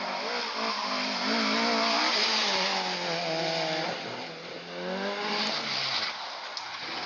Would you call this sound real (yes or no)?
yes